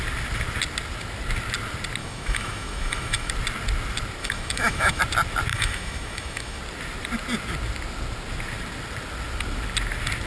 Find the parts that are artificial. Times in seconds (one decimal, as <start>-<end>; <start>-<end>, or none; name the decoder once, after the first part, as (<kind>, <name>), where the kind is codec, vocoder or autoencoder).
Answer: 2.0-3.3 (autoencoder, DAC-VAE); 4.2-5.0; 5.5-6.6